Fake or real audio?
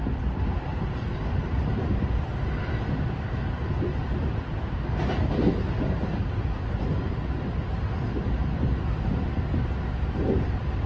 real